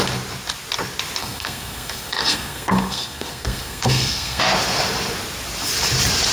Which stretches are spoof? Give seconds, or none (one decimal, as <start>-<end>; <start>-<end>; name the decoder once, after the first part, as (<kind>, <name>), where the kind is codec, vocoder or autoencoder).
1.2-4.4 (codec, SNAC)